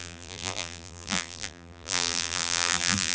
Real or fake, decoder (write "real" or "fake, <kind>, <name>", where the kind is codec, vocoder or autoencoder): fake, vocoder, BigVGAN v2